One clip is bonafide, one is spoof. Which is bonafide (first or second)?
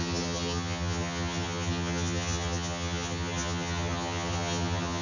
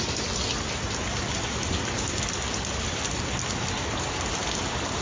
second